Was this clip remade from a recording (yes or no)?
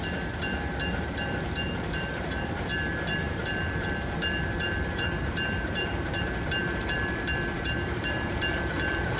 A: yes